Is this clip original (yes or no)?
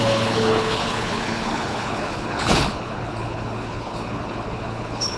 no